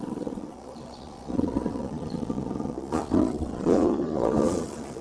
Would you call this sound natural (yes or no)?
no